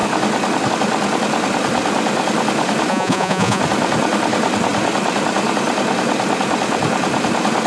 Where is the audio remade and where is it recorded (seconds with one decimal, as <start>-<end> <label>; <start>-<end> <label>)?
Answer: 0.0-2.9 recorded; 2.9-3.6 remade; 3.6-7.7 recorded